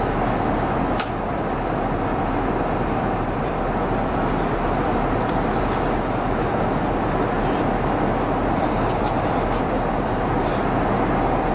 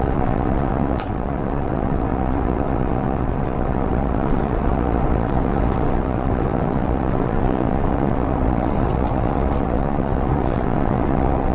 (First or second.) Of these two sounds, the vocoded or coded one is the second